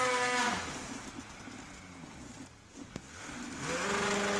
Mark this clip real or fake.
real